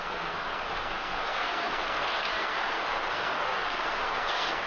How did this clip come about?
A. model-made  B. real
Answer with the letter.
A